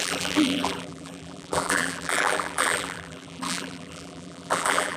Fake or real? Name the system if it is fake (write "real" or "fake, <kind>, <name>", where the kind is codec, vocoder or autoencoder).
fake, vocoder, BigVGAN v2